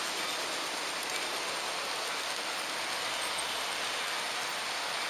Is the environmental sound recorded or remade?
recorded